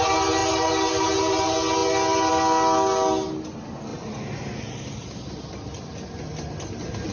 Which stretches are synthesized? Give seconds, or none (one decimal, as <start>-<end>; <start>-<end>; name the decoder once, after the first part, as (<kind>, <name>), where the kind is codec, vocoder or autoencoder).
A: none